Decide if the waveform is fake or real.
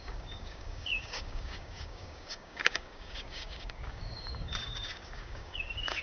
fake